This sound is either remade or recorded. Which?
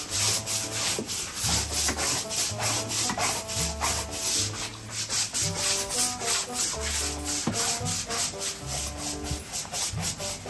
recorded